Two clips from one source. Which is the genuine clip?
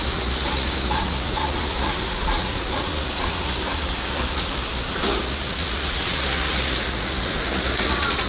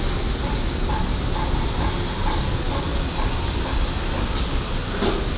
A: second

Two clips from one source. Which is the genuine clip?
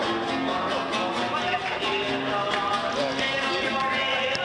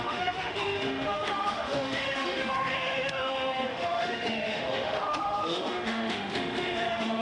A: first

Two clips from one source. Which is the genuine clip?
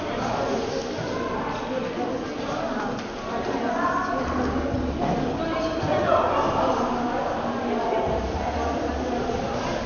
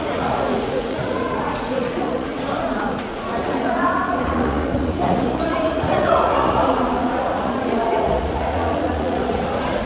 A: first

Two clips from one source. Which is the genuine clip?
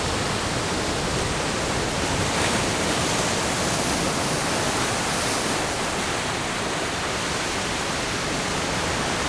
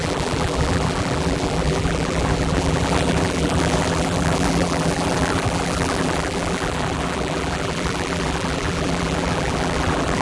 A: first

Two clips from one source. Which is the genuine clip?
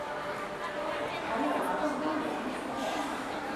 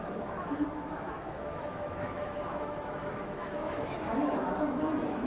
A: first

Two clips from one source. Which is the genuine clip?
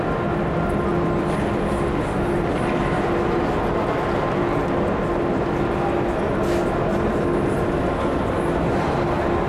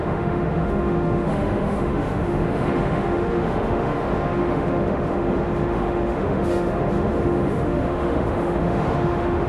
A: first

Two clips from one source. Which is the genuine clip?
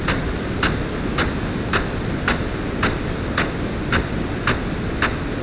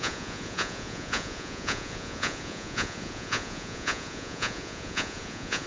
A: first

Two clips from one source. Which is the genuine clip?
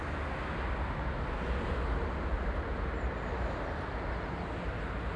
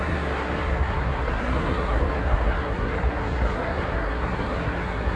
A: first